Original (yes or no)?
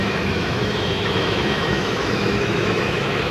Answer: no